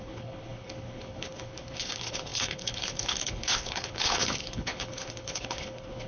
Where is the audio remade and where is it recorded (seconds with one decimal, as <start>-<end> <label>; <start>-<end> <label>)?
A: 0.0-6.1 remade

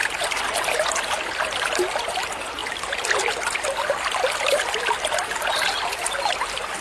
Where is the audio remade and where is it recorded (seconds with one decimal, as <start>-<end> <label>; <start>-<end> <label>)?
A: 0.0-6.8 recorded

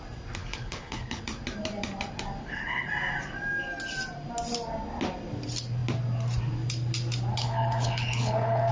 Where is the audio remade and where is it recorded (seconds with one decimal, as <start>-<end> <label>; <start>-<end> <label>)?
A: 0.0-0.4 recorded; 0.4-1.2 remade; 1.2-2.4 recorded; 2.4-2.9 remade; 2.9-7.3 recorded; 7.3-8.7 remade

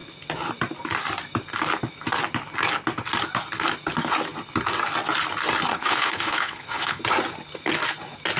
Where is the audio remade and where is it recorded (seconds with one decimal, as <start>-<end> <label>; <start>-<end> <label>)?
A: 0.0-5.7 recorded; 5.7-7.0 remade; 7.0-8.4 recorded

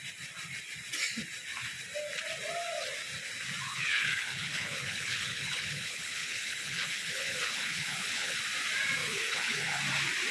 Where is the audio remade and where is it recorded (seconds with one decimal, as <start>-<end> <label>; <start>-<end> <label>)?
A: 0.0-3.7 recorded; 3.7-8.4 remade; 8.4-9.0 recorded; 9.0-9.8 remade; 9.8-10.3 recorded